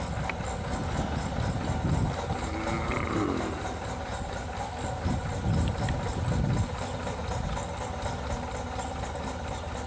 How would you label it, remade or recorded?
recorded